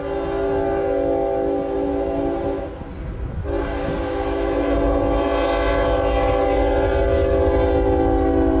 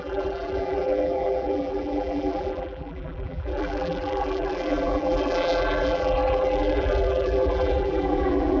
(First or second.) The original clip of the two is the first